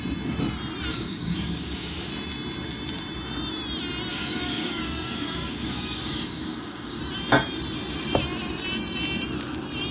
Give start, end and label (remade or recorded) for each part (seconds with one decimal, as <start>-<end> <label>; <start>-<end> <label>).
0.0-0.9 recorded; 0.9-2.1 remade; 2.1-4.1 recorded; 4.1-7.0 remade; 7.0-9.9 recorded